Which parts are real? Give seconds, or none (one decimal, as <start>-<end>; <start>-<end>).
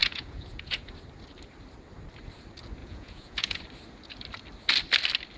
0.8-2.8; 3.6-5.4